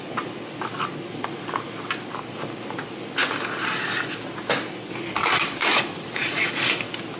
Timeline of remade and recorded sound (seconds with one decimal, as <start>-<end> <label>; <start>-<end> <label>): 0.0-5.6 recorded; 5.6-6.7 remade; 6.7-7.2 recorded